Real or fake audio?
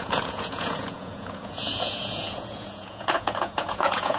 fake